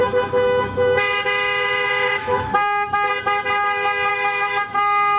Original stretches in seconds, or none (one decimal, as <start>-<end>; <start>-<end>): 3.1-4.1